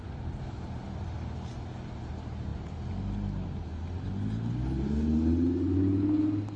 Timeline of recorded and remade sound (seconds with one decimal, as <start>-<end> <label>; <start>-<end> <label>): 0.0-6.6 recorded